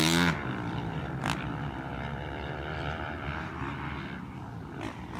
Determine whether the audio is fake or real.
real